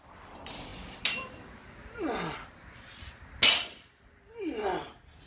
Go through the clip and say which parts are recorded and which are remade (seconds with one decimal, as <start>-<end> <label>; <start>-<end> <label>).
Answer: 0.0-0.7 remade; 0.7-3.9 recorded; 3.9-5.3 remade